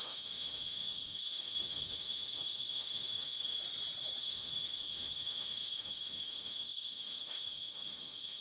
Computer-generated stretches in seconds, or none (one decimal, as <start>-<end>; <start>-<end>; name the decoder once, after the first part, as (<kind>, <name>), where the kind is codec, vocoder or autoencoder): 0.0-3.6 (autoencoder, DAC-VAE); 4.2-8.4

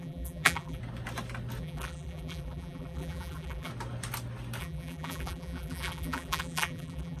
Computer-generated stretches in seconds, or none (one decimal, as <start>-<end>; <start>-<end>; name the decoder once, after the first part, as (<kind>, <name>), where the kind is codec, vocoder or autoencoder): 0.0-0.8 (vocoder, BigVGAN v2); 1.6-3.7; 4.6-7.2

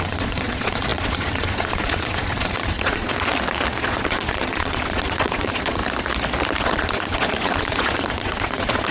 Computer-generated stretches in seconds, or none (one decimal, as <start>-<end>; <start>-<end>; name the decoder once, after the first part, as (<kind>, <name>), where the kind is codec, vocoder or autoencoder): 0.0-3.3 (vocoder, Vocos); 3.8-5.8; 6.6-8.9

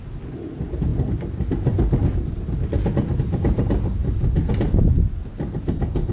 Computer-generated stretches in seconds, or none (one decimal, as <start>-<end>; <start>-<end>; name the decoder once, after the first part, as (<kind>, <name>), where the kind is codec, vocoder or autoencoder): none

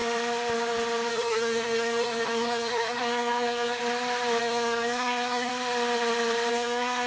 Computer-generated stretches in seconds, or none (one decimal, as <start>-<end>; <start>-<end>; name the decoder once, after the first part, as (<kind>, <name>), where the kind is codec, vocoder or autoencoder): 1.1-3.8 (codec, SNAC); 4.4-5.5; 6.5-7.1

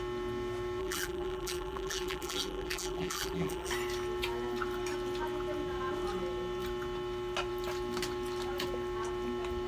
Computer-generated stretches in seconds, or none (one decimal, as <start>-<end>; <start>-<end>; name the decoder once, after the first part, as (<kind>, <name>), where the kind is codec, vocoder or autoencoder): 0.8-3.7 (vocoder, BigVGAN v2)

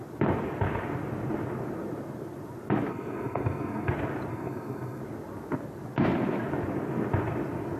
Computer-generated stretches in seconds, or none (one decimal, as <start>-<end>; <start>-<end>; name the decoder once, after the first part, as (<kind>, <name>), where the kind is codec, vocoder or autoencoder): 2.9-3.9 (codec, SNAC); 4.3-5.0

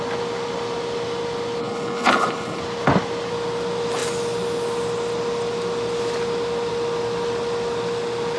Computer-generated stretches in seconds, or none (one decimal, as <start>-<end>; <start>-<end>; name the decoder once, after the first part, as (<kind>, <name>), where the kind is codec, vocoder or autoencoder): 1.6-2.6 (codec, HILCodec)